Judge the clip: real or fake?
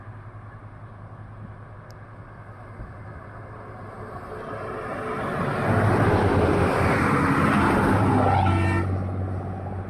real